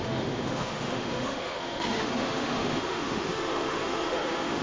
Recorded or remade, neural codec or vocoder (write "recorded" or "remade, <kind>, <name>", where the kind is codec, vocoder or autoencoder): remade, autoencoder, DAC-VAE